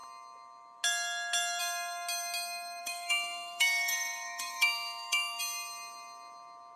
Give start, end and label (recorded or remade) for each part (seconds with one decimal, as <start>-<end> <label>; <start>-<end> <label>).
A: 0.0-2.8 recorded; 2.8-5.4 remade; 5.4-6.8 recorded